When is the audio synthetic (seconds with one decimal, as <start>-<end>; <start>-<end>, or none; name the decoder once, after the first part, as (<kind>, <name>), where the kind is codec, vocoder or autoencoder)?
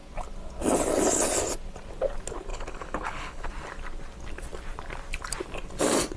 2.5-3.5 (codec, HILCodec)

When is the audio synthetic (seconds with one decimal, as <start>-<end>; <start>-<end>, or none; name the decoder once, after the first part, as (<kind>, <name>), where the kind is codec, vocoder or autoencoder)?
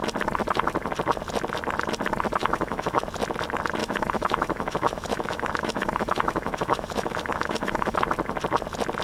2.4-3.0 (autoencoder, DAC-VAE); 3.8-8.0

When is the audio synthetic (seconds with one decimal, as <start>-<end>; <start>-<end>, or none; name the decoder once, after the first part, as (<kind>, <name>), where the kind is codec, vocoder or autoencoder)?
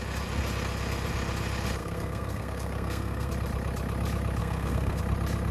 1.8-3.3 (codec, SNAC); 4.4-5.0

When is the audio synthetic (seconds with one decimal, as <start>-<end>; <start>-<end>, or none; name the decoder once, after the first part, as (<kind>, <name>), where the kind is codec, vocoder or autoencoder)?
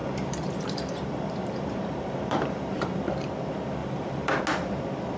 0.0-3.1 (vocoder, BigVGAN v2); 3.8-4.4